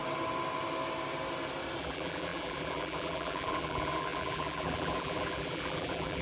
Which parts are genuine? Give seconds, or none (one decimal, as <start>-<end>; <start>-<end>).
0.0-1.8